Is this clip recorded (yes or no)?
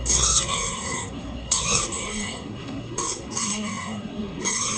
no